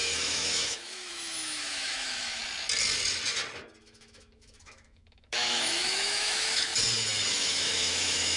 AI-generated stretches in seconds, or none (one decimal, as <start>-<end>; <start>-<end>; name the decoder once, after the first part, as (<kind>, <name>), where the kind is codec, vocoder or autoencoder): 0.0-2.4 (autoencoder, DAC-VAE); 3.8-6.7; 7.3-8.4